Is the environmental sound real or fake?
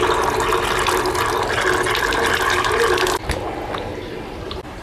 real